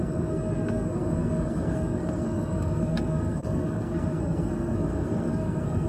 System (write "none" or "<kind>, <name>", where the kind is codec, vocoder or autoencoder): codec, SNAC